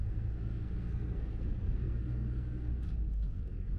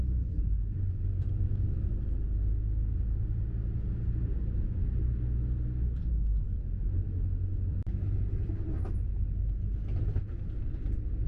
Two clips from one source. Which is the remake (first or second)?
first